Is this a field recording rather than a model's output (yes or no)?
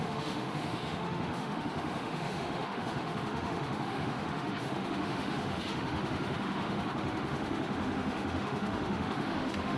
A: no